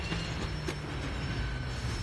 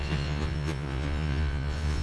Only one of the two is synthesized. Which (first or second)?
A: second